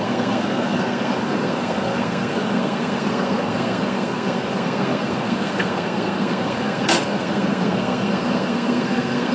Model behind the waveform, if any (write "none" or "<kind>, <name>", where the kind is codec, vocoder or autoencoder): codec, SNAC